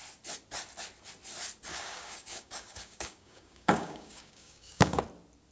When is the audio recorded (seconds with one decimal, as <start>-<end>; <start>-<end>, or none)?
0.0-1.7; 5.0-5.5